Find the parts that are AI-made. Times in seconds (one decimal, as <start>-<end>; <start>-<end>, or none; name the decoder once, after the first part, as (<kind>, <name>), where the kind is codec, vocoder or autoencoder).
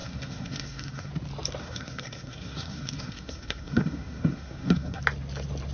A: 0.0-1.1 (codec, SNAC); 1.6-5.0